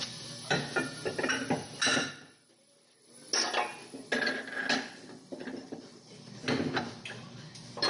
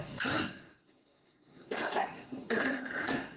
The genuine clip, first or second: first